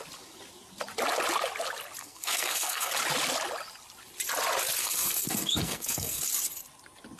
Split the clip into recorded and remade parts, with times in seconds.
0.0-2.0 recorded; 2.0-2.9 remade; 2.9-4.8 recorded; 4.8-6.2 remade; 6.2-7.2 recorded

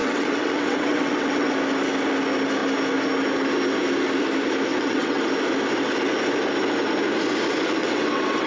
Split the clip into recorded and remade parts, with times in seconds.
0.0-1.5 remade; 1.5-4.7 recorded; 4.7-5.2 remade; 5.2-7.8 recorded; 7.8-8.5 remade

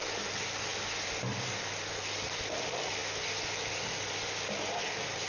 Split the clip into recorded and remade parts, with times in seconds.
0.0-5.3 recorded

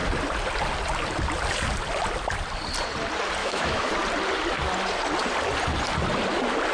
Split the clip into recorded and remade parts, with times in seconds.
0.0-3.4 recorded; 3.4-3.9 remade; 3.9-6.7 recorded